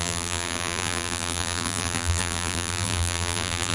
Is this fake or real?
fake